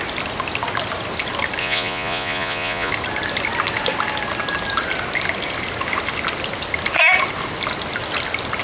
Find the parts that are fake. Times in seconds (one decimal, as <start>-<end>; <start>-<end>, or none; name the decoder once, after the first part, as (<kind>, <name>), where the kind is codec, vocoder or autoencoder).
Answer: 1.6-2.9 (vocoder, Vocos)